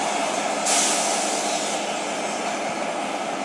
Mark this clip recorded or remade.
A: recorded